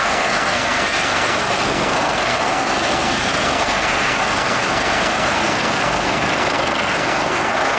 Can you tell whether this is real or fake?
fake